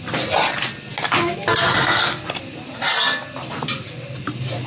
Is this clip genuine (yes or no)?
yes